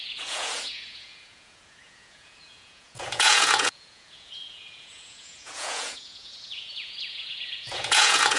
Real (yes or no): no